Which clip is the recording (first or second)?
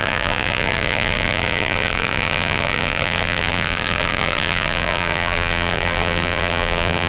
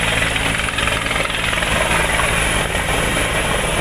second